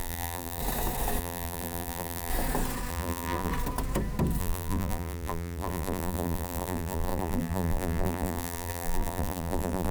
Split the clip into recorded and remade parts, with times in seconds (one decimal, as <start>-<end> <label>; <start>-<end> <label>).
0.0-0.6 remade; 0.6-1.2 recorded; 1.2-2.3 remade; 2.3-2.9 recorded; 2.9-3.5 remade; 3.5-4.4 recorded; 4.4-9.9 remade